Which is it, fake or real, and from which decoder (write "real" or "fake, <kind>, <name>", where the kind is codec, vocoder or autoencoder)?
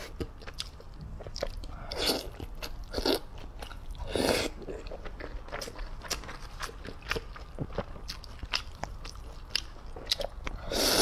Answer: real